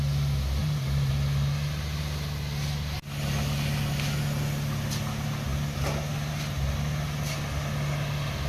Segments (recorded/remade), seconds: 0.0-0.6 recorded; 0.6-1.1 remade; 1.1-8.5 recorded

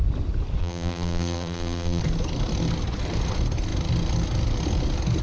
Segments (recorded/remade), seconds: 0.0-0.6 recorded; 0.6-2.0 remade; 2.0-5.2 recorded

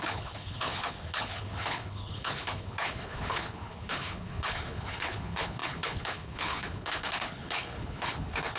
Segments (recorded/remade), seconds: 0.0-8.6 remade

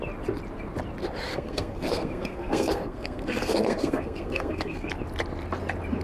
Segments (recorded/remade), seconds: 0.0-1.3 recorded; 1.3-4.9 remade; 4.9-6.0 recorded

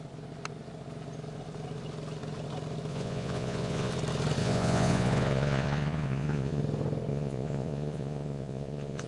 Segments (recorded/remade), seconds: 0.0-2.9 recorded; 2.9-3.9 remade; 3.9-4.4 recorded; 4.4-6.6 remade; 6.6-7.1 recorded; 7.1-9.1 remade

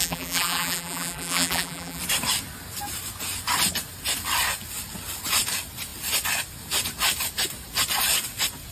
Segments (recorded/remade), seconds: 0.0-2.0 remade; 2.0-8.7 recorded